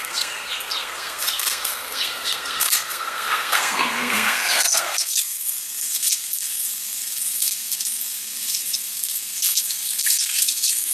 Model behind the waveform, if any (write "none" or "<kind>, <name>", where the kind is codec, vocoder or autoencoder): codec, SNAC